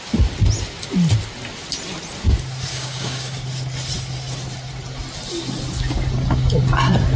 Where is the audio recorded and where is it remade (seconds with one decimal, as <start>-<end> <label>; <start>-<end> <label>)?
0.0-2.7 recorded; 2.7-3.4 remade; 3.4-7.2 recorded